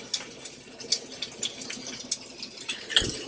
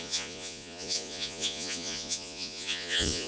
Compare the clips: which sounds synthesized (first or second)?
second